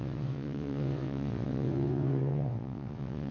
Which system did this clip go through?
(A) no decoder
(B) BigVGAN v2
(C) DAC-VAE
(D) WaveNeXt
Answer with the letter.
D